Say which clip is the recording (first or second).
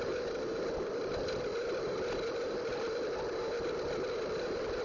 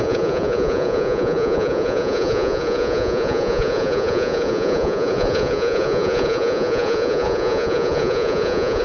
first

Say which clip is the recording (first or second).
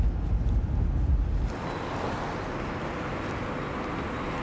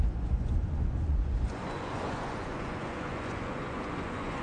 first